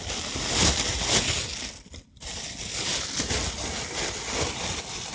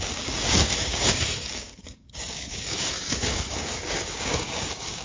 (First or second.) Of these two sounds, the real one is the first